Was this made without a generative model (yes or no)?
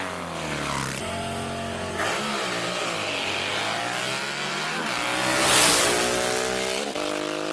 yes